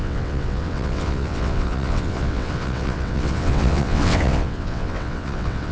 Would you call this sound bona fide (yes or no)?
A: no